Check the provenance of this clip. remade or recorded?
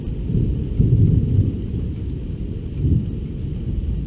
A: recorded